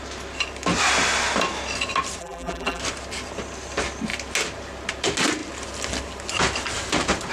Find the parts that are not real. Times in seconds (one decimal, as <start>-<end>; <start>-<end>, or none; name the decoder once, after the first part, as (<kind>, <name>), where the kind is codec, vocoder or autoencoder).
2.2-2.8 (vocoder, BigVGAN v2)